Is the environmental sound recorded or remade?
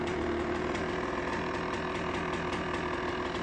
recorded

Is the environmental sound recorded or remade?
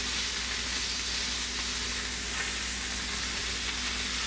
recorded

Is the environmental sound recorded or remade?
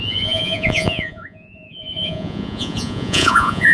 remade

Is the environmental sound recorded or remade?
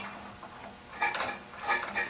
recorded